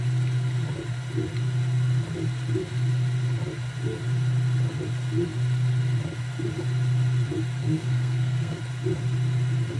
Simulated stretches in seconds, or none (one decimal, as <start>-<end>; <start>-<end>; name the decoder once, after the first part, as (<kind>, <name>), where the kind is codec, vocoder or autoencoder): 7.6-8.6 (codec, SNAC)